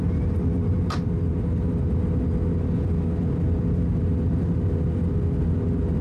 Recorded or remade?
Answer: recorded